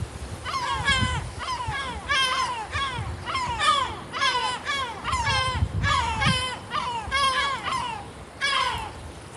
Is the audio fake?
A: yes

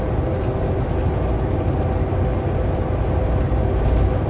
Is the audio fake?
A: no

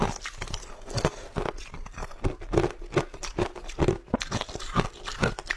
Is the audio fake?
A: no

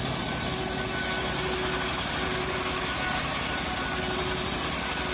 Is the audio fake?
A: no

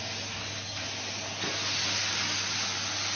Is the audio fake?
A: no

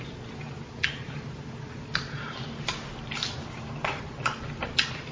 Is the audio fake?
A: no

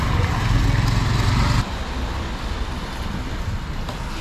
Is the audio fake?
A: no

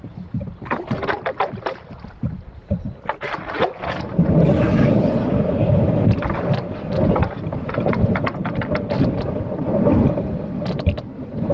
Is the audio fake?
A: no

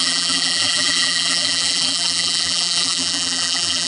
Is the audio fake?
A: yes